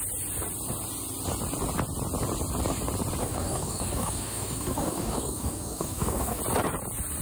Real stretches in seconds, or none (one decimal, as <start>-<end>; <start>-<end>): 0.0-3.2; 6.4-7.2